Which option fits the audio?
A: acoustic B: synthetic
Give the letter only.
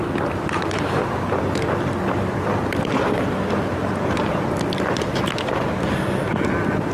A